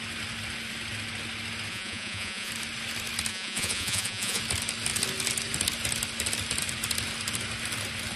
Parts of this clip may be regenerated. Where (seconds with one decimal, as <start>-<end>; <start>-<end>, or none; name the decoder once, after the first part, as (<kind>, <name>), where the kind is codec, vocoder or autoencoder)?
1.7-2.5 (vocoder, Vocos); 3.3-4.4